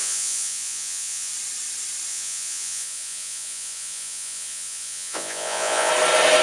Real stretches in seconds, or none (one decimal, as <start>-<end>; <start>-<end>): 1.3-2.1; 5.9-6.4